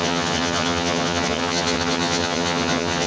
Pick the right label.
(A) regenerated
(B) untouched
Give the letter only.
A